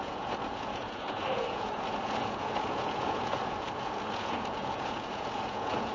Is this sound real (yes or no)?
no